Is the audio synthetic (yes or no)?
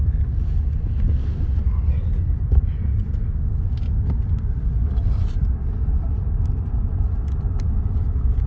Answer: no